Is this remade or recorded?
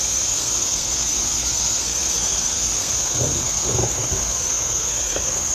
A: remade